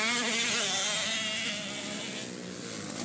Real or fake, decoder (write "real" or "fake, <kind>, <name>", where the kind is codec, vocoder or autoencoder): real